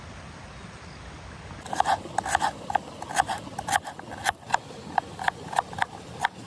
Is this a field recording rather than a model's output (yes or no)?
yes